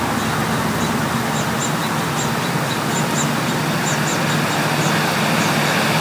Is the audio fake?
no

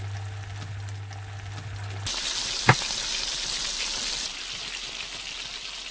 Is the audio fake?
no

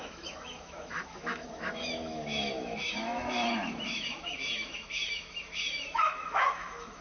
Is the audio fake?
yes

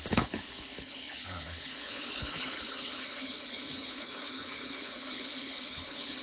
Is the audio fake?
yes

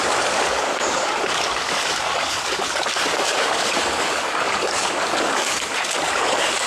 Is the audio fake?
yes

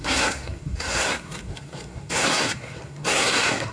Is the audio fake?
yes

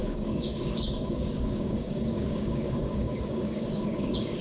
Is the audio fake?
yes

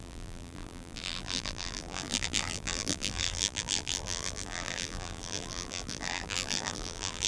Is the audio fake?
yes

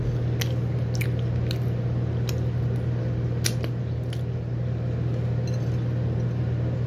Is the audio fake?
no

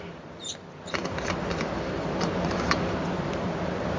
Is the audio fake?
yes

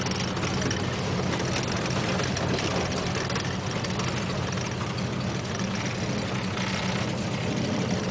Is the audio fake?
no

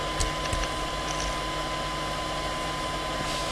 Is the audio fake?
no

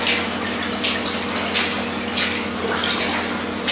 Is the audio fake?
no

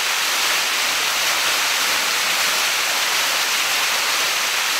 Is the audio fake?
no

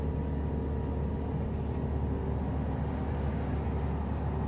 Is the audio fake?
no